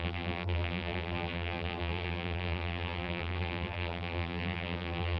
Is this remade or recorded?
remade